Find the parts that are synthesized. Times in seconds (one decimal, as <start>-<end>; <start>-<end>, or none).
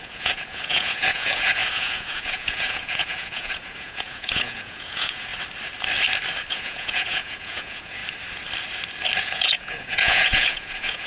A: 0.0-5.3; 6.5-8.0; 9.2-11.1